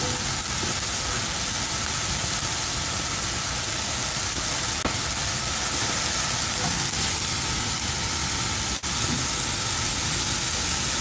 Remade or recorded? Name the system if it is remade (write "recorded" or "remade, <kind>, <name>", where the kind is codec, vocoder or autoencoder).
recorded